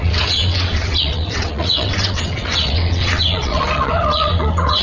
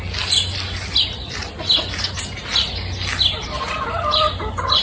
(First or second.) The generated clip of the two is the first